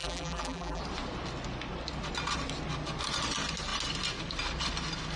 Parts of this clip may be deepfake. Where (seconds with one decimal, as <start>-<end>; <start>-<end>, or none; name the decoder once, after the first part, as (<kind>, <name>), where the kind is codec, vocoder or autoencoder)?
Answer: 0.0-0.8 (vocoder, BigVGAN v2)